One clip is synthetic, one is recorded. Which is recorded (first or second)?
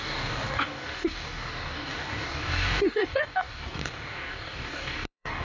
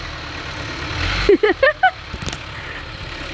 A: second